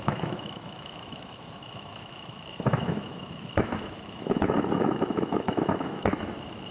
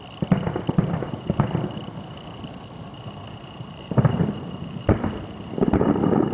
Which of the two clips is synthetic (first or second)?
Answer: first